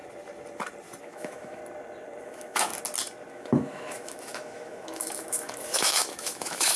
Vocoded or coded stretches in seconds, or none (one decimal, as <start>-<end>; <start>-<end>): 1.0-1.6; 2.2-2.7; 3.3-6.8